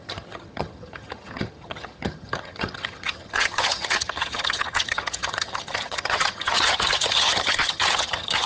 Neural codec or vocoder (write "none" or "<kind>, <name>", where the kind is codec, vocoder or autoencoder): vocoder, HiFi-GAN